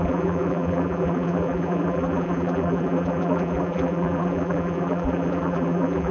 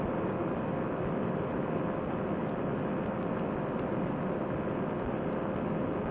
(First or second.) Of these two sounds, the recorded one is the second